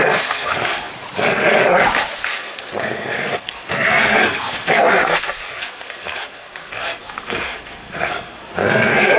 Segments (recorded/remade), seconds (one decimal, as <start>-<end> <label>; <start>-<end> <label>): 0.0-0.9 remade; 0.9-2.2 recorded; 2.2-9.2 remade